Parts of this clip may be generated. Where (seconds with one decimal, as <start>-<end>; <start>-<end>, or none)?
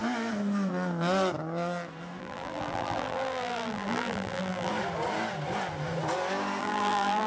2.2-4.7; 6.6-7.3